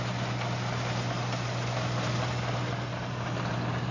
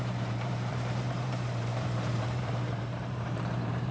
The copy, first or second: second